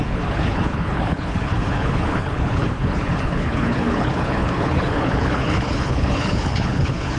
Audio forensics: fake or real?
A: fake